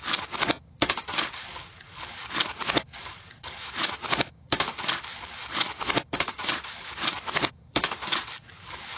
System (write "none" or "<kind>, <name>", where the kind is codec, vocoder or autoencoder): codec, DAC